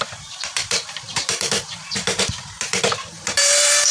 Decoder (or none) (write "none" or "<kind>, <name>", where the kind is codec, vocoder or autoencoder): vocoder, BigVGAN v2